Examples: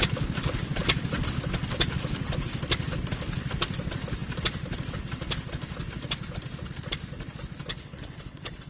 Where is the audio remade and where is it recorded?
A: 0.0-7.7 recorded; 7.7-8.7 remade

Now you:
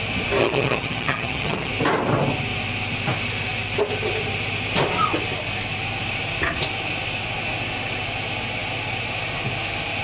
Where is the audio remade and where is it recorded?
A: 0.0-0.4 recorded; 0.4-1.7 remade; 1.7-10.0 recorded